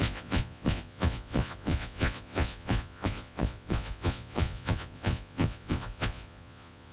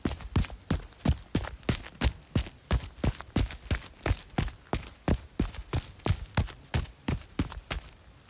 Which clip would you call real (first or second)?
second